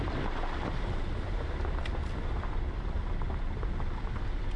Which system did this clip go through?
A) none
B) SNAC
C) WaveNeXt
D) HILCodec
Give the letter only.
A